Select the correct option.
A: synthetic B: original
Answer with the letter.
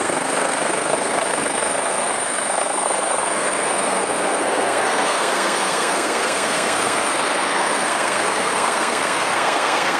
A